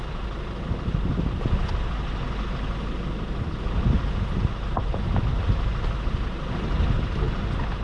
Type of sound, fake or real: real